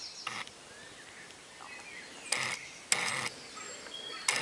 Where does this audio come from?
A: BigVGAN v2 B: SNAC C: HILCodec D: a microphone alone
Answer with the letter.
D